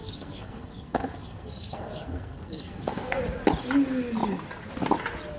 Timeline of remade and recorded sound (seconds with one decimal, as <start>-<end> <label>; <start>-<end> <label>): 0.0-3.2 remade; 3.2-5.4 recorded